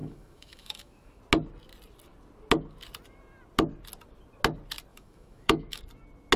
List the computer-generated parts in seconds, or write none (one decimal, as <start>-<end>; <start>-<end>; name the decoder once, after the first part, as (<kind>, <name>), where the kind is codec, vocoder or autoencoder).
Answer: 0.0-1.2 (autoencoder, DAC-VAE); 4.9-5.8